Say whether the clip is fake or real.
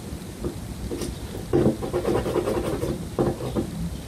real